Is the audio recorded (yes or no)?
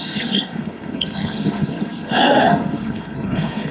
no